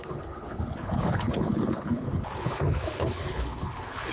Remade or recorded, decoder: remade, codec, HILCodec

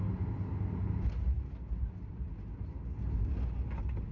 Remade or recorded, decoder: recorded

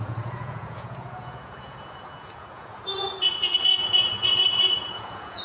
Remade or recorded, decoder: remade, vocoder, Vocos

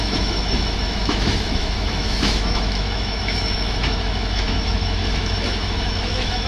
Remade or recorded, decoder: remade, autoencoder, DAC-VAE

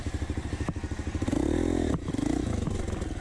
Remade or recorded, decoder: recorded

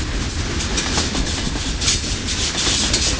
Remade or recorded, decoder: recorded